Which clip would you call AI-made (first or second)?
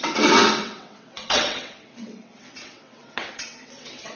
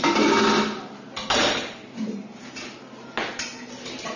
first